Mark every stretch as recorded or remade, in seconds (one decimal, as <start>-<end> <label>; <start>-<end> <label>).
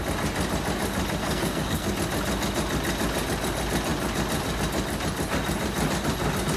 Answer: 0.0-1.2 recorded; 1.2-1.9 remade; 1.9-6.6 recorded